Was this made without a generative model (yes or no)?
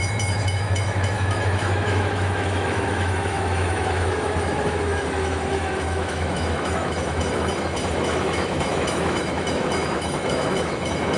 no